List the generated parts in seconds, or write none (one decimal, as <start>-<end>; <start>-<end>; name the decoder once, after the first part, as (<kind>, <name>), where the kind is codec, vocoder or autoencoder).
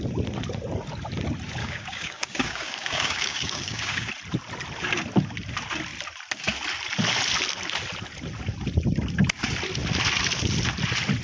1.6-4.1 (codec, DAC)